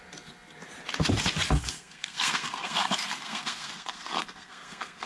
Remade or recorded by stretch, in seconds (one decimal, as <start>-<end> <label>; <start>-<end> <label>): 0.0-1.6 recorded; 1.6-5.1 remade